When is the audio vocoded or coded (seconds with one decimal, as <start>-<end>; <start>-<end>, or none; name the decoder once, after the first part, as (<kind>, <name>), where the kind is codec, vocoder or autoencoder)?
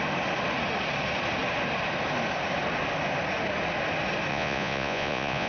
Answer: 4.3-5.5 (vocoder, Vocos)